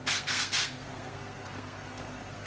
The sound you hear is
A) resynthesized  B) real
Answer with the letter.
A